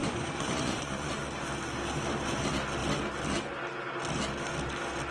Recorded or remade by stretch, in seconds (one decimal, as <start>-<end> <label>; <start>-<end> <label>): 0.0-1.1 remade; 1.1-5.1 recorded